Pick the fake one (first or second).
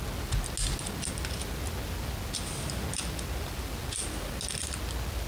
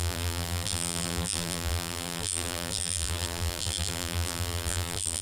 second